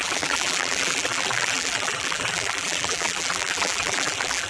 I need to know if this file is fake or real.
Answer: fake